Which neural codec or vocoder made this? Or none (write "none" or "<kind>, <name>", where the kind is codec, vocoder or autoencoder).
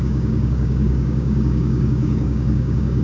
codec, DAC